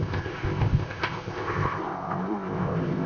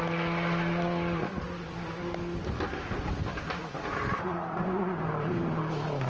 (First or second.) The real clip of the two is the second